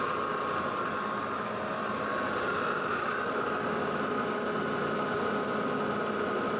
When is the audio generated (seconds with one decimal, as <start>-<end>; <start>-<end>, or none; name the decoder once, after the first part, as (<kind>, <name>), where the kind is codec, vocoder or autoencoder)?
none